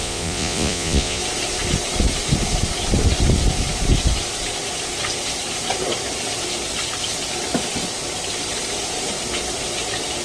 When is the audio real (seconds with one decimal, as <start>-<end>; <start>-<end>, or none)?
1.2-10.2